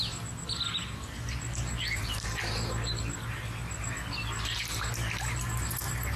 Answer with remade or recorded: recorded